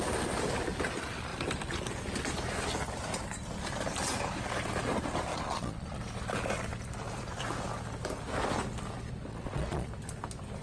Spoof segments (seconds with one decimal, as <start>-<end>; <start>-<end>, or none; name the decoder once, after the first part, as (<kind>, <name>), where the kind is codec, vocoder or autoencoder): 5.3-6.0 (vocoder, Vocos); 9.3-9.9